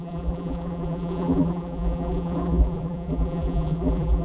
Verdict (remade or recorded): remade